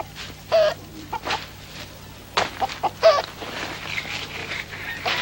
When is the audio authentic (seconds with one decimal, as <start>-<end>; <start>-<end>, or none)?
0.0-4.4